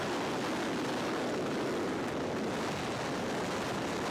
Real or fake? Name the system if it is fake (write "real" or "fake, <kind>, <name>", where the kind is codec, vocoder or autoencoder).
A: real